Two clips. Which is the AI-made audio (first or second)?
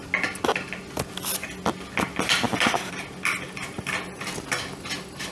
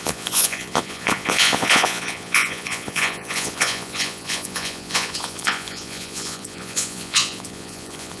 second